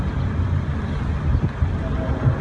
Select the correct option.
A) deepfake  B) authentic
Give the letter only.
B